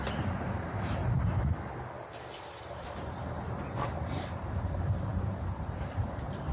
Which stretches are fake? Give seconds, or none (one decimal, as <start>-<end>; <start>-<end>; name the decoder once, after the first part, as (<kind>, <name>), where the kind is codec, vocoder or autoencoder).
0.0-1.0 (vocoder, BigVGAN v2); 2.5-6.5